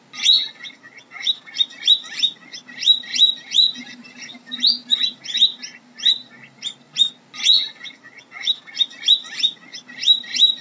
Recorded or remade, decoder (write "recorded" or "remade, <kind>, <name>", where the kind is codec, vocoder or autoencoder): recorded